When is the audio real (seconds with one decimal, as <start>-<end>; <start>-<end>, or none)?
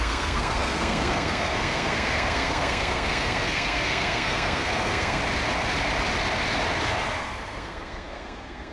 5.2-7.2